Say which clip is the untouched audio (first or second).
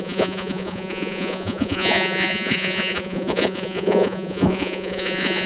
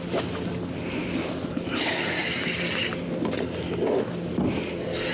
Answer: second